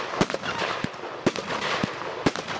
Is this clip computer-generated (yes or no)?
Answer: no